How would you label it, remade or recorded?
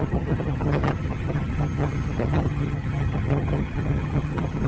remade